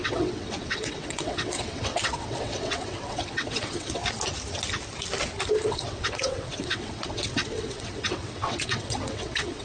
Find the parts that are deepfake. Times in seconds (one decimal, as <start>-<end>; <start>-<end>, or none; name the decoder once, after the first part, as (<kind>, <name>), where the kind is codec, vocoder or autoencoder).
0.0-4.0 (vocoder, WaveNeXt); 5.7-9.6